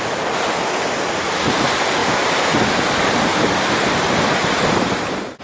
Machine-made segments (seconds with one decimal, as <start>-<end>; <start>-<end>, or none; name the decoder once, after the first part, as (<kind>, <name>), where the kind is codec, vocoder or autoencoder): none